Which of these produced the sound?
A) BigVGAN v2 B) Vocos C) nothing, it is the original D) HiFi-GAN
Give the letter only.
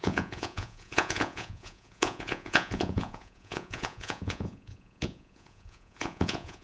B